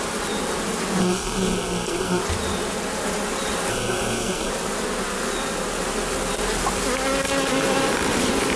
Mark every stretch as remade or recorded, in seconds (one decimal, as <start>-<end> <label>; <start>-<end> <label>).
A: 0.0-1.0 recorded; 1.0-2.2 remade; 2.2-3.7 recorded; 3.7-4.5 remade; 4.5-8.6 recorded